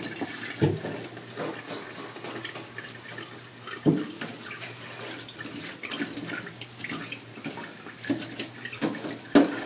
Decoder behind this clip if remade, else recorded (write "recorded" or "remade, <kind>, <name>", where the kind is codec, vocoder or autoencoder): recorded